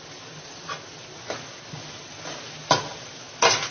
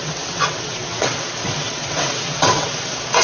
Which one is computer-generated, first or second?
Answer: second